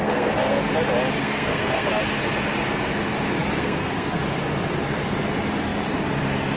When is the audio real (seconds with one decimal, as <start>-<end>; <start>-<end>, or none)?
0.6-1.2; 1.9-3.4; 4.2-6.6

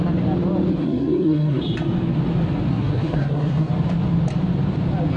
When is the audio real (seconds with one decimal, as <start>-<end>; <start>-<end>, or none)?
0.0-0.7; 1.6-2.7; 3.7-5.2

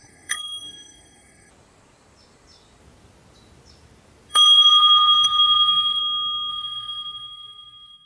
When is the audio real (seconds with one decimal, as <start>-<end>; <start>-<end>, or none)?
1.5-4.3; 6.0-6.5

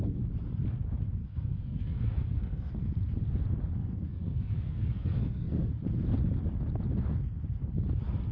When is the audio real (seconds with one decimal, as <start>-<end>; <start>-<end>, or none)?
0.0-1.2; 2.7-3.8; 5.7-8.3

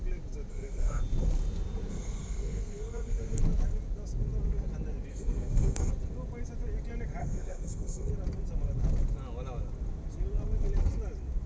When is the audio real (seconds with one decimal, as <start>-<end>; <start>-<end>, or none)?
0.0-0.5; 1.0-1.9; 3.4-5.1; 5.9-7.2; 8.1-11.5